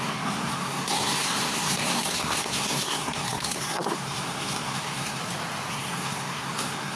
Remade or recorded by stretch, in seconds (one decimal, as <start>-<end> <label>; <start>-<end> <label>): 0.0-5.2 remade; 5.2-5.7 recorded; 5.7-7.0 remade